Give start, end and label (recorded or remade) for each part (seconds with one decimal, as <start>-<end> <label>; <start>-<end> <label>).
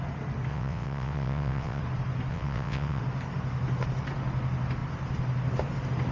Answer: 0.0-0.5 recorded; 0.5-1.8 remade; 1.8-2.3 recorded; 2.3-3.0 remade; 3.0-6.1 recorded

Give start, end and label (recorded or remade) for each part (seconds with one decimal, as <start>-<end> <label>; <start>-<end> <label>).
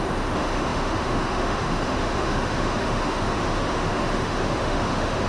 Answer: 0.0-5.3 remade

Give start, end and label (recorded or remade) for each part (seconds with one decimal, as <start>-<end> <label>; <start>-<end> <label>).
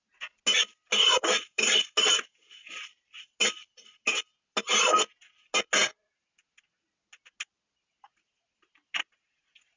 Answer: 0.0-9.8 recorded